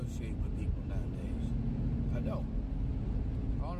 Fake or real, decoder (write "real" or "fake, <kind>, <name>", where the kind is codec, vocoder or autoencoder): real